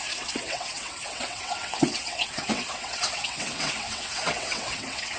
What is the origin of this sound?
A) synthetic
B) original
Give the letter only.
A